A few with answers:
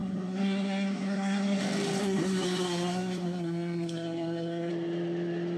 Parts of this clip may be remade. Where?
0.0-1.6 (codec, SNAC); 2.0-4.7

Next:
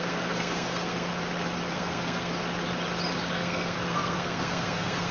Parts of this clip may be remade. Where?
0.0-1.1 (codec, SNAC); 1.7-2.3; 3.3-5.1

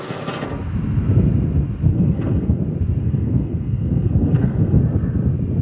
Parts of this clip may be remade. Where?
1.9-2.6 (codec, SNAC); 3.0-4.8

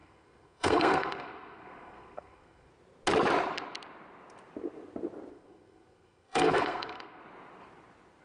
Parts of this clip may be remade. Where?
0.0-2.7 (codec, SNAC); 5.3-7.2